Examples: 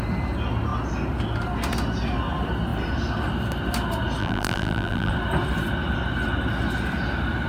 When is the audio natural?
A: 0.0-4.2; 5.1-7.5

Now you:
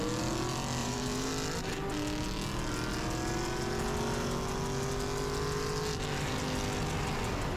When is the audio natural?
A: 0.0-0.8; 1.3-7.6

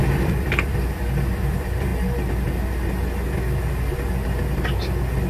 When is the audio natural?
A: 1.9-5.3

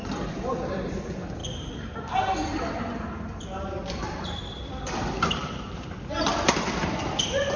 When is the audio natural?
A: 1.4-4.0

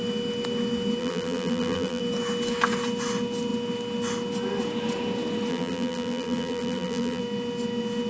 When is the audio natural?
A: 0.0-1.0; 2.0-5.5; 7.2-8.1

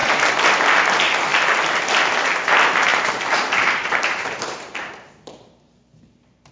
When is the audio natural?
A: 0.0-2.9; 5.1-6.5